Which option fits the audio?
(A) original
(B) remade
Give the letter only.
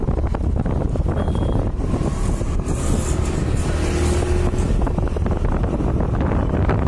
A